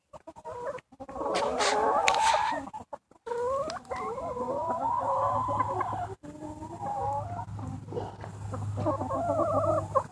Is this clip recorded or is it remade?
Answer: recorded